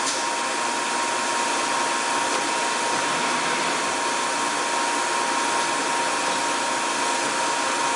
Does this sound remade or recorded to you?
recorded